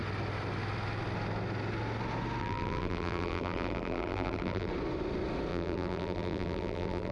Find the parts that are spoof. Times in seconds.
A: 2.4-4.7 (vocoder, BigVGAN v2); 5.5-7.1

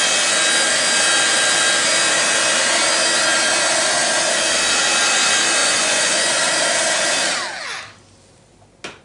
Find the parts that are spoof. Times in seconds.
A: 5.6-6.4 (vocoder, Vocos)